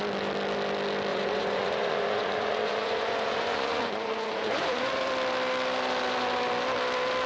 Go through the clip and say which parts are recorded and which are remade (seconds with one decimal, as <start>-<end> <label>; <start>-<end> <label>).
0.0-1.1 recorded; 1.1-5.1 remade; 5.1-7.3 recorded